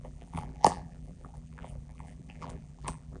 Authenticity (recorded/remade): remade